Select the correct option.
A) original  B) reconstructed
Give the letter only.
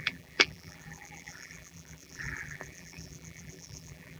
B